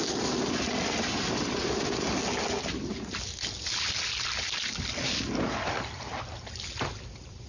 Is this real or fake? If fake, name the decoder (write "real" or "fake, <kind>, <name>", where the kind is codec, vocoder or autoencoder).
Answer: real